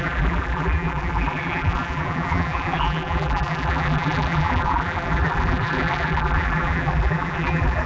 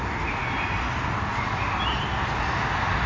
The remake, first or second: first